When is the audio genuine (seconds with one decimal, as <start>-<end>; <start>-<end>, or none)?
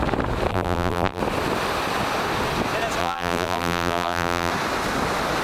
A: 0.0-0.5; 1.2-3.0; 4.5-5.4